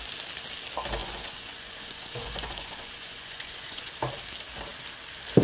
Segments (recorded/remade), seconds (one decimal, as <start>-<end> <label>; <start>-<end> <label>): 0.0-1.0 recorded; 1.0-3.9 remade; 3.9-5.4 recorded